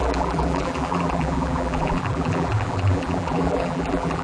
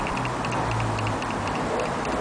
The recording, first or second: second